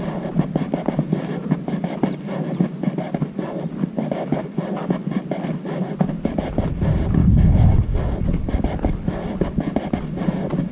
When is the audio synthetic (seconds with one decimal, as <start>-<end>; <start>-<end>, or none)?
7.2-8.0